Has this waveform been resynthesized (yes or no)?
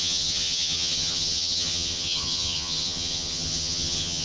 yes